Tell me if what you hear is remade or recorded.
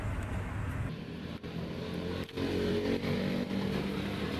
recorded